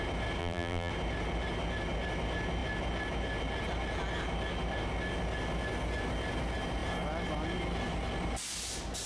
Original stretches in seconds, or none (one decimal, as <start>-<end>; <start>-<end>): 0.0-0.4; 0.9-9.1